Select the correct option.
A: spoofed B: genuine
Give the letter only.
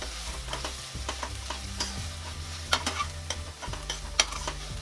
B